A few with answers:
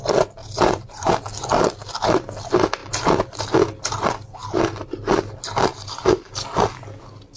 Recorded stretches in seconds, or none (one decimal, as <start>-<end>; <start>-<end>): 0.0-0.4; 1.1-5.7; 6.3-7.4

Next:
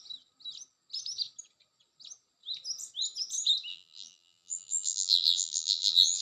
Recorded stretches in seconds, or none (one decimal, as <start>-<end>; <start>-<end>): 0.0-3.7

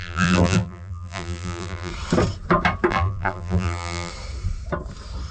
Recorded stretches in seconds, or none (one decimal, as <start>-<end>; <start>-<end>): 1.9-2.9; 4.1-5.3